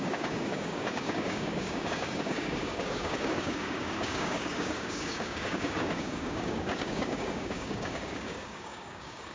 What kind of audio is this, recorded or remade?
remade